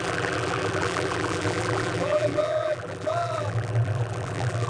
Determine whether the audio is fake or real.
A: fake